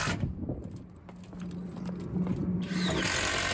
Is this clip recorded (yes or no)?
yes